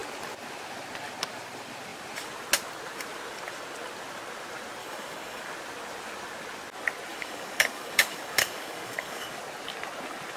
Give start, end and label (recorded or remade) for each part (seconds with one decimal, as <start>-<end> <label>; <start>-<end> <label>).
0.0-4.8 recorded; 4.8-5.4 remade; 5.4-7.1 recorded; 7.1-9.4 remade; 9.4-10.4 recorded